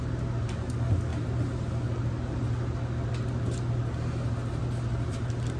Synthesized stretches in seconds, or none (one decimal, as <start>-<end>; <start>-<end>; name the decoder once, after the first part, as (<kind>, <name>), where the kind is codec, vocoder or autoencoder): none